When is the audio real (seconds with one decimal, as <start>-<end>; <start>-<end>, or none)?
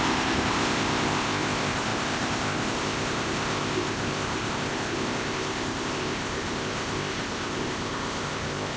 none